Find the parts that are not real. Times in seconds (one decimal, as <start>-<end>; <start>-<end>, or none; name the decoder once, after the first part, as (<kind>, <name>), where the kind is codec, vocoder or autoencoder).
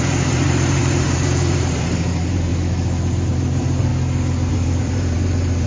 0.0-2.5 (vocoder, BigVGAN v2); 3.3-3.9; 4.5-5.7